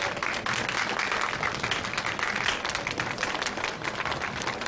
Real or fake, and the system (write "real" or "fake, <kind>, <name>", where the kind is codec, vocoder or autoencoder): real